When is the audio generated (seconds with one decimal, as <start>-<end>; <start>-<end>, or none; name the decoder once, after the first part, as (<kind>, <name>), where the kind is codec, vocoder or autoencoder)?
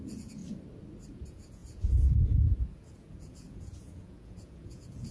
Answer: 0.0-0.4 (vocoder, Vocos); 1.1-5.1